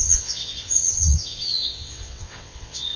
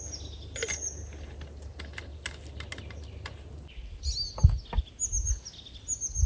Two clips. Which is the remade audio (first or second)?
first